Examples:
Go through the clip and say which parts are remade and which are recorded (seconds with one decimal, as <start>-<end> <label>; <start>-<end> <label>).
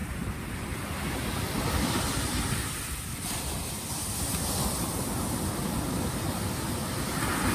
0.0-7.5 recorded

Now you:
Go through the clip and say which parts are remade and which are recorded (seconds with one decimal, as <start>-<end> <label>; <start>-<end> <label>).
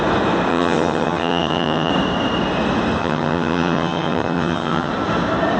0.0-0.5 recorded; 0.5-1.9 remade; 1.9-3.0 recorded; 3.0-4.9 remade; 4.9-5.6 recorded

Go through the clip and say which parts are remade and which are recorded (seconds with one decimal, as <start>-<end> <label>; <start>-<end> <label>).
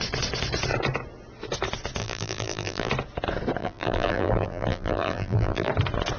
0.0-2.0 recorded; 2.0-2.9 remade; 2.9-3.6 recorded; 3.6-5.7 remade; 5.7-6.2 recorded